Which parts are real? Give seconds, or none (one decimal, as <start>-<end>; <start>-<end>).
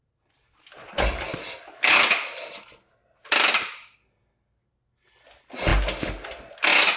0.0-7.0